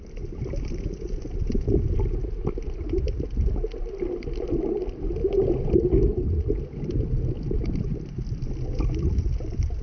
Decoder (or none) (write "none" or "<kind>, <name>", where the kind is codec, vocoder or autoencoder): none